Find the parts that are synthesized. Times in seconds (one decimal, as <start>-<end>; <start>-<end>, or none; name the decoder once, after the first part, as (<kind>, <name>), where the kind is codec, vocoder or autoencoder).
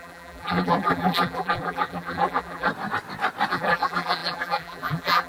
0.0-2.7 (vocoder, BigVGAN v2); 3.5-5.3